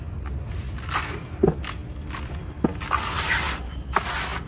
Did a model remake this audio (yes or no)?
no